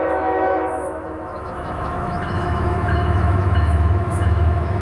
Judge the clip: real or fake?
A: fake